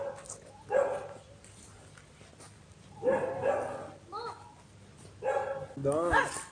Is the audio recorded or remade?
recorded